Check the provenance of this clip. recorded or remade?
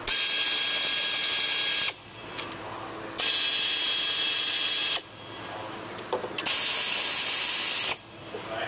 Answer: recorded